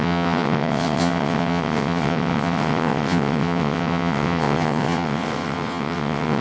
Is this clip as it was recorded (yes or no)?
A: no